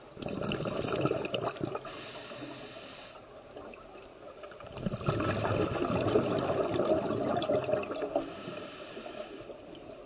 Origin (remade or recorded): recorded